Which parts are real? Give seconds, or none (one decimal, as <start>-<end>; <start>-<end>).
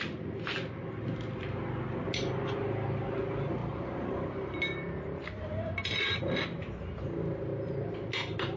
0.0-3.6; 6.2-8.6